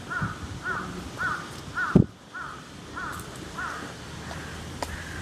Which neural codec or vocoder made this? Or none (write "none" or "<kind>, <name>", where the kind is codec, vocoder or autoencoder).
none